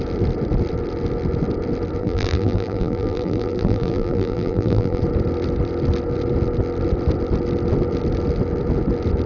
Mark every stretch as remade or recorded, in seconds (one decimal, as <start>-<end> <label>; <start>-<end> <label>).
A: 0.0-2.0 recorded; 2.0-5.0 remade; 5.0-9.3 recorded